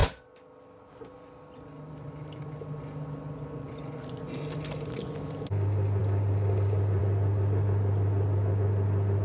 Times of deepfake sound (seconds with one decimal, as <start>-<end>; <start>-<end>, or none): none